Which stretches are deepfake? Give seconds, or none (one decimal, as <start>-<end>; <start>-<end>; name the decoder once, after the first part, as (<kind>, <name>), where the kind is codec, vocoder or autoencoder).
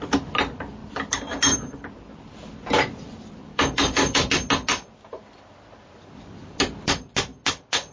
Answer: 3.5-4.3 (codec, DAC)